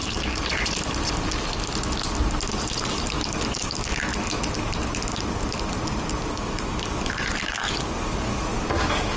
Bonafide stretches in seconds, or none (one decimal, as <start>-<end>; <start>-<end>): 0.0-3.1; 4.1-6.3; 8.3-9.2

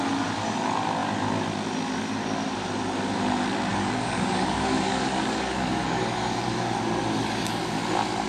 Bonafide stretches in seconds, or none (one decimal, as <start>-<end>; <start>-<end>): 0.0-3.7; 6.8-7.2; 7.8-8.3

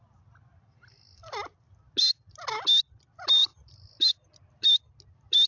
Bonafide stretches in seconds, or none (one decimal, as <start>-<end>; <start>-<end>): 0.0-5.5

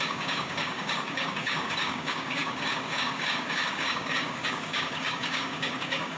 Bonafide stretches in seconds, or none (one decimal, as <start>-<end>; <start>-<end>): none